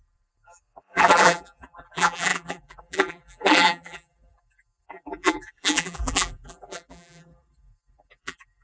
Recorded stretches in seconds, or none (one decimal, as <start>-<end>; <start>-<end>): none